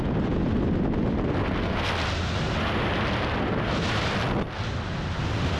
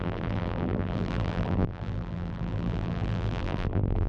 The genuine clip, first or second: first